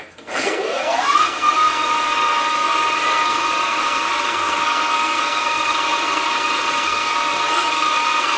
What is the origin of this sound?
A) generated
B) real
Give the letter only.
A